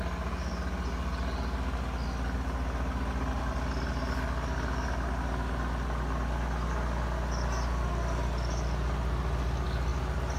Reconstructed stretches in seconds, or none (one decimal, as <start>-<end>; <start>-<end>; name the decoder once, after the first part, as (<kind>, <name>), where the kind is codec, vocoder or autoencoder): none